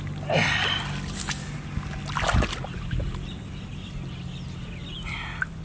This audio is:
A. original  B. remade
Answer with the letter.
A